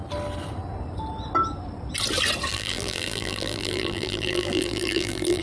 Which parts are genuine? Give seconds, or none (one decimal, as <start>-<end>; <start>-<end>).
0.0-2.5